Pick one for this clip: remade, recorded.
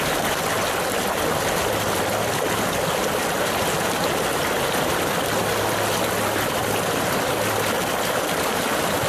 recorded